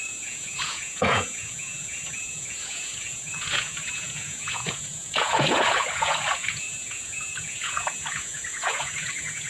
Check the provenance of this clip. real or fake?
fake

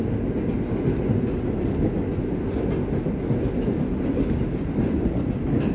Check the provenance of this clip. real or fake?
real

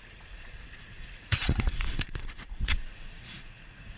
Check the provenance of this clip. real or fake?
fake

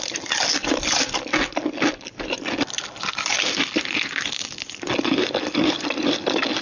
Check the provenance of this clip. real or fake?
real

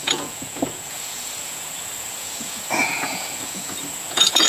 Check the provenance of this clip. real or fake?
fake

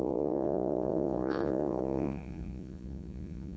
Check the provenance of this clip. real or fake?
fake